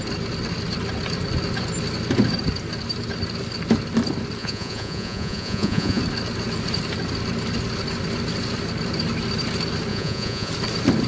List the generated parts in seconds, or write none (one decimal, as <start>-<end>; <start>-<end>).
4.4-6.0; 9.9-10.5